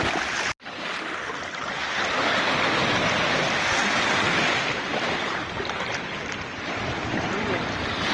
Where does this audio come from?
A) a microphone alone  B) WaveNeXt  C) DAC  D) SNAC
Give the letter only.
A